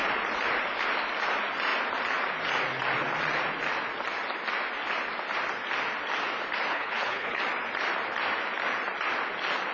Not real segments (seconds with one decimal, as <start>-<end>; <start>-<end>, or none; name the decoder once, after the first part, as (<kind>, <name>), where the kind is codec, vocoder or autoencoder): 6.7-7.4 (codec, HILCodec)